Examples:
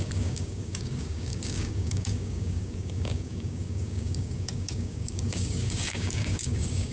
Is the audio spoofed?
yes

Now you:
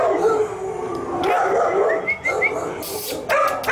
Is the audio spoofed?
no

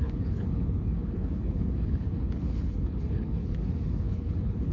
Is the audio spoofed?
yes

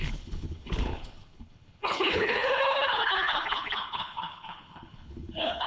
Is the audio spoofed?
yes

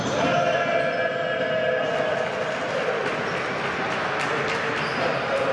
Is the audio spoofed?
no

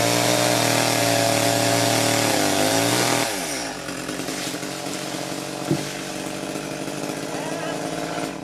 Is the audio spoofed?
no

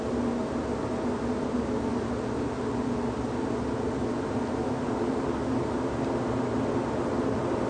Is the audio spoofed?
no